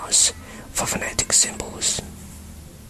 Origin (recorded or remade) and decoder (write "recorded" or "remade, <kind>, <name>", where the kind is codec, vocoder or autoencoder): recorded